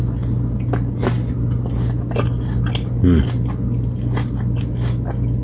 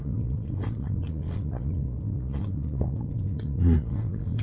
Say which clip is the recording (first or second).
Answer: first